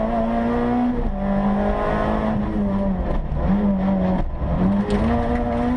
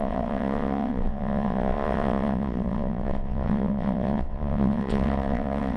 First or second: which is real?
first